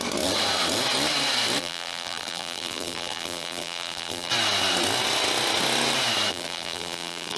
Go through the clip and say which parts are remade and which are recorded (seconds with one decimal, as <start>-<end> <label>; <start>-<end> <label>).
0.0-1.6 recorded; 1.6-4.3 remade; 4.3-6.3 recorded; 6.3-7.4 remade